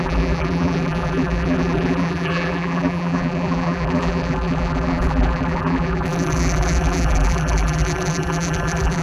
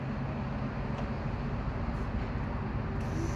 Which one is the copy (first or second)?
first